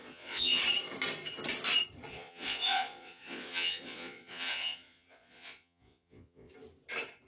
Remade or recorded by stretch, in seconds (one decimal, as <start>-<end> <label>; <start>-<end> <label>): 0.0-0.6 remade; 0.6-2.1 recorded; 2.1-6.5 remade; 6.5-7.3 recorded